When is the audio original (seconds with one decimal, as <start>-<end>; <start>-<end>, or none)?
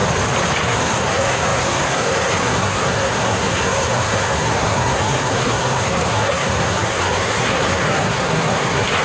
0.0-0.6